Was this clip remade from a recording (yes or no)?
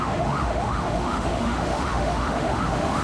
yes